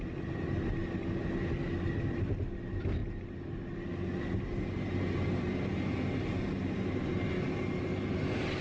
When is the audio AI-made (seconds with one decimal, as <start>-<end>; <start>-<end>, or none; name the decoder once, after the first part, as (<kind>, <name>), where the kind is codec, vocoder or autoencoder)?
none